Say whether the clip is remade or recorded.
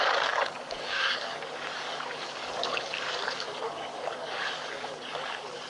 remade